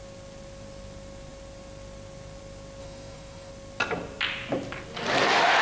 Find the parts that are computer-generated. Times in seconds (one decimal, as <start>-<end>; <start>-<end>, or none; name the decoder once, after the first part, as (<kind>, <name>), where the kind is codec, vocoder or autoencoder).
2.8-3.5 (codec, SNAC)